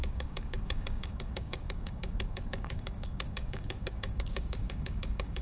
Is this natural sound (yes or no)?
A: no